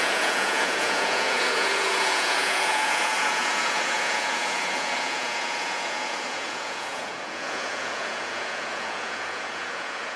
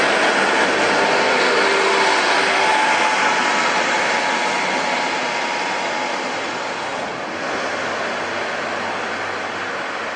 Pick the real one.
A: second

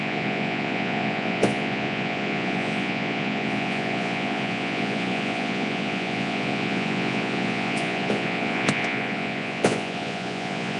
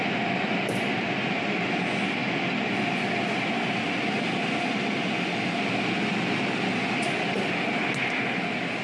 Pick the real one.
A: second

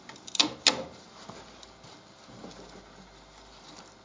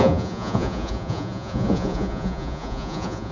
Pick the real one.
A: first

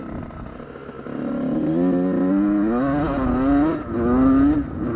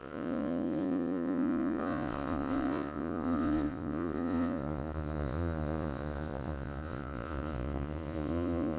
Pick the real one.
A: first